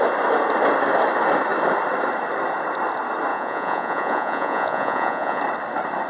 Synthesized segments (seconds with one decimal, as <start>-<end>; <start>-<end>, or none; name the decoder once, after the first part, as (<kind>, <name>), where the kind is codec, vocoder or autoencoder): 3.3-5.4 (vocoder, Vocos)